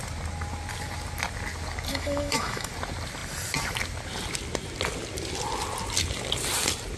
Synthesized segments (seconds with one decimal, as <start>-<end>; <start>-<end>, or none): 1.9-2.7